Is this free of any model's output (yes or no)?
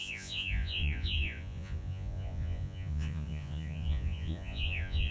no